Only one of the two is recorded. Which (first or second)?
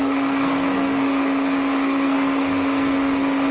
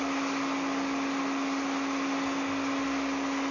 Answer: second